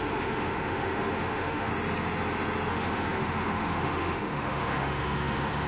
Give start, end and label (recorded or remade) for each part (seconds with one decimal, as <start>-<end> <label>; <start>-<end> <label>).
0.0-1.7 remade; 1.7-2.7 recorded; 2.7-5.7 remade